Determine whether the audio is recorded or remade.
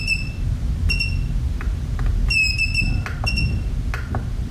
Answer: recorded